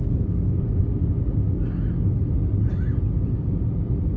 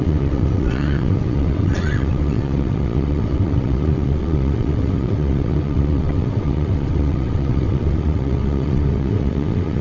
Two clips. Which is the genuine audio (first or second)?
first